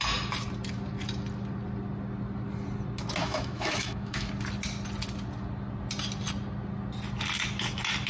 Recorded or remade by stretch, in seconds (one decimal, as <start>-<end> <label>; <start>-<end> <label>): 0.0-3.2 recorded; 3.2-4.3 remade; 4.3-8.1 recorded